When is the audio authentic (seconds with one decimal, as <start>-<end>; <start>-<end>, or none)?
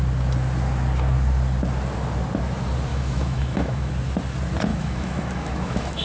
0.0-2.9; 3.9-4.7